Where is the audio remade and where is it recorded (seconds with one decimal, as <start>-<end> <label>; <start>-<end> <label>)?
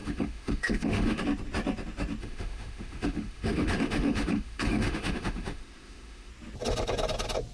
0.0-1.2 remade; 1.2-2.2 recorded; 2.2-6.3 remade; 6.3-7.5 recorded